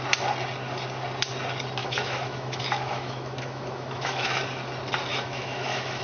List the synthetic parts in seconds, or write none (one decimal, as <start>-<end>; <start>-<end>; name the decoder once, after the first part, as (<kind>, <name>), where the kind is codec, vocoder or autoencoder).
1.8-4.4 (autoencoder, DAC-VAE); 5.1-6.0